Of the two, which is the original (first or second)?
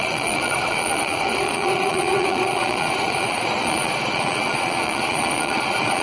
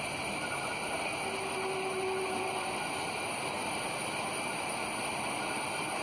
second